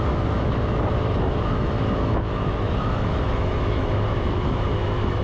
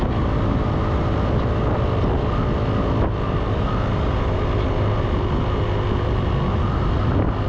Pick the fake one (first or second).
first